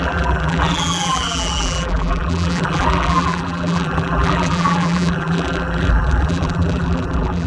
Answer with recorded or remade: remade